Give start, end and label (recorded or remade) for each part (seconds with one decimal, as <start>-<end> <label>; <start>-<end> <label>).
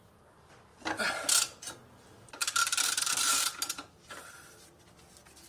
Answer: 0.0-2.4 recorded; 2.4-4.8 remade; 4.8-5.5 recorded